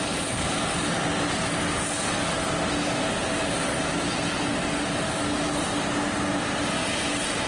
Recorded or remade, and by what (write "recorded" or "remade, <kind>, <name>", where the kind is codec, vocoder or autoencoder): recorded